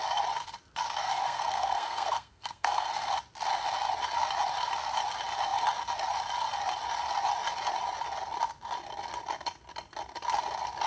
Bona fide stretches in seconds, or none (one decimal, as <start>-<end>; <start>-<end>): 0.0-1.0; 3.1-10.9